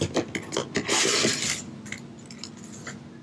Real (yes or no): yes